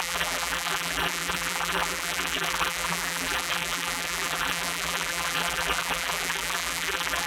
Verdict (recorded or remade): remade